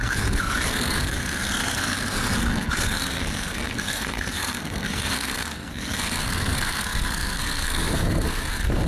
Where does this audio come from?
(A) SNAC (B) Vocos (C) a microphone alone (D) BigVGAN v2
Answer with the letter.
A